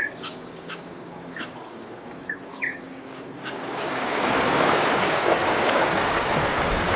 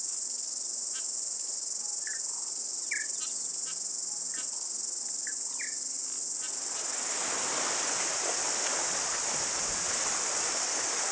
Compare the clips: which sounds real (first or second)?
second